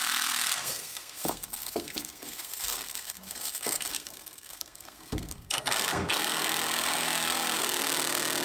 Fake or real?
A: fake